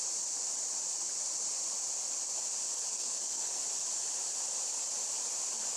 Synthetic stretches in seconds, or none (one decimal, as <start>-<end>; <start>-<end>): 2.9-3.6